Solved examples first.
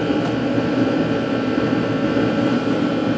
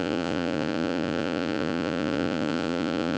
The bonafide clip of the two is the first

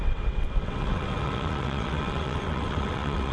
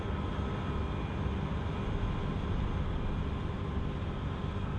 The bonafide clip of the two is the second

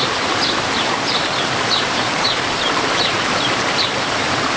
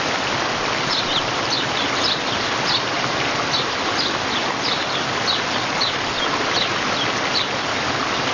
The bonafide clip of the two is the second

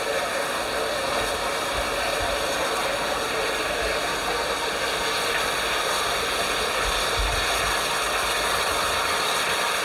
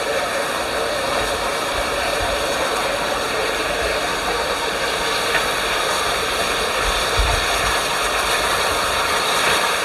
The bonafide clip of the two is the first